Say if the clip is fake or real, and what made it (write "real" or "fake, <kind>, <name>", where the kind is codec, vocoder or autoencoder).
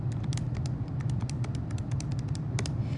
fake, vocoder, BigVGAN v2